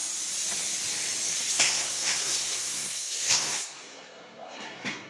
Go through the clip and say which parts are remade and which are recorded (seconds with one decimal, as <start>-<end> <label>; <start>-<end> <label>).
0.0-1.5 recorded; 1.5-5.1 remade